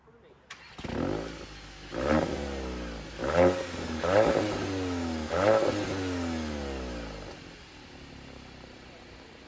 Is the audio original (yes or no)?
yes